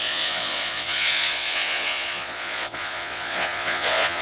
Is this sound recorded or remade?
remade